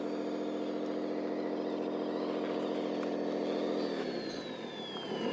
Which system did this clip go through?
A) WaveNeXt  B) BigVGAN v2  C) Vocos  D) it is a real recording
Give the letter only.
D